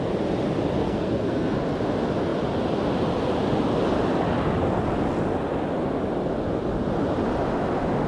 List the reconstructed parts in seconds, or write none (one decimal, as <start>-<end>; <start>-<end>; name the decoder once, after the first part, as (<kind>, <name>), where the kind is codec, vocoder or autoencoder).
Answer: 0.8-1.6 (codec, SNAC)